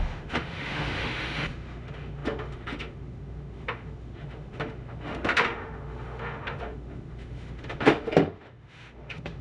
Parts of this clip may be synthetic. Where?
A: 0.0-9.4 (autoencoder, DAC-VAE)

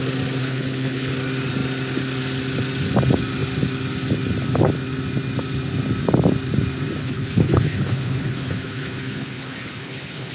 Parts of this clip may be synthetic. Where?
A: 0.4-1.1 (codec, HILCodec); 7.0-10.3

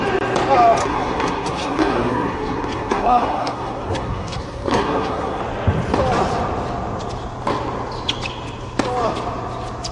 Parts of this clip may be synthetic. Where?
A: 0.8-5.4 (codec, SNAC)

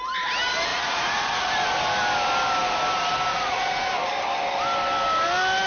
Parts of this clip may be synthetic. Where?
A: 0.7-1.5 (vocoder, Vocos); 3.3-3.9

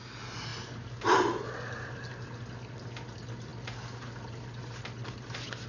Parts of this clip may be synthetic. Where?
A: none

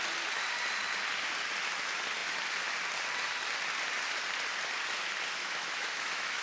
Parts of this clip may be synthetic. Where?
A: 5.4-6.4 (autoencoder, DAC-VAE)